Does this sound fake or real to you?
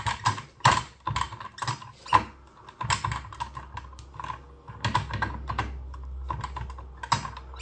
real